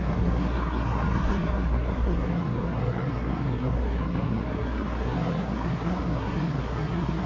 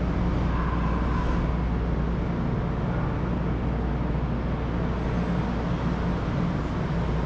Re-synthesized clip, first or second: first